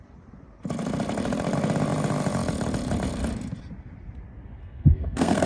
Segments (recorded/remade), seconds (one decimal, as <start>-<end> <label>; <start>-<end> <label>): 0.0-4.6 recorded; 4.6-5.5 remade